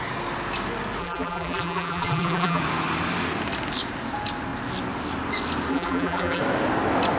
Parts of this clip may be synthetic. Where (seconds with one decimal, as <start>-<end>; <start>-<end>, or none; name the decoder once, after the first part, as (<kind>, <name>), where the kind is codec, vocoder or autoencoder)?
1.0-2.6 (vocoder, BigVGAN v2); 5.7-6.4